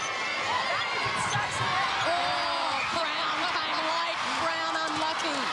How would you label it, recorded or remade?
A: recorded